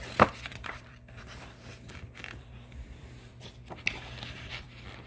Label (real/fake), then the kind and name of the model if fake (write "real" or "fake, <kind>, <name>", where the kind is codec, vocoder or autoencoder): fake, vocoder, BigVGAN v2